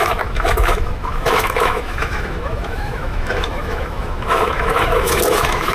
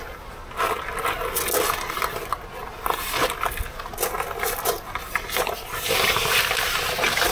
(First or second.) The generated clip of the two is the first